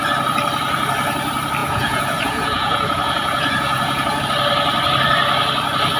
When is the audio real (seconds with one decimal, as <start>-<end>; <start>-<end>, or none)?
0.0-1.6; 4.2-6.0